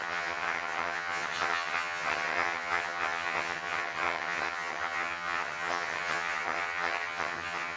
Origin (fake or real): fake